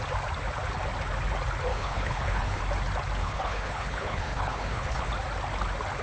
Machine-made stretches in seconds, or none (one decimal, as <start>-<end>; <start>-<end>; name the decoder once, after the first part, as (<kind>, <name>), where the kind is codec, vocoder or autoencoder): 1.7-2.6 (codec, HILCodec); 3.2-5.1